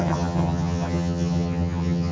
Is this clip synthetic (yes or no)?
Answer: yes